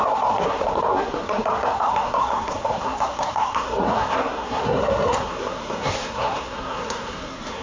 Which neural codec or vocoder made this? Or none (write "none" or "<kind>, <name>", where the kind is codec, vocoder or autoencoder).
codec, SNAC